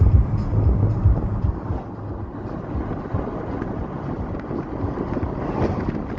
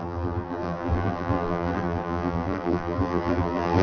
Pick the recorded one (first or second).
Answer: first